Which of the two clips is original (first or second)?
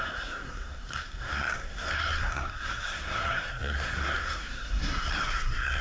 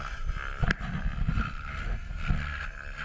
second